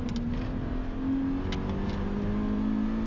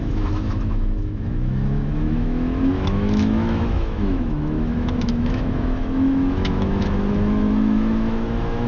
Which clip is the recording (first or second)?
first